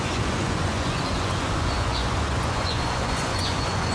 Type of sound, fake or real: fake